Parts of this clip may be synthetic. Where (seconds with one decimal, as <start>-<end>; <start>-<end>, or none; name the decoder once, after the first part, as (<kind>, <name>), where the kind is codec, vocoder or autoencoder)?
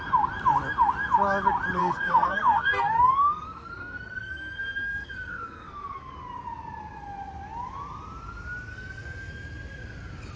1.8-6.1 (codec, SNAC); 8.7-9.3